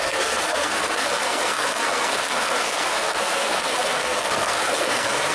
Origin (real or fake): fake